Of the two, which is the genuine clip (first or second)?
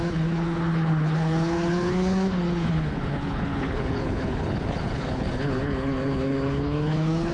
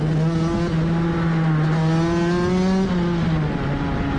second